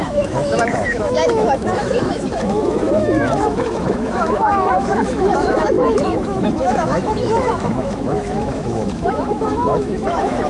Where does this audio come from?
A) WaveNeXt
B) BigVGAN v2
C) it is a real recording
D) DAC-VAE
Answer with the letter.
D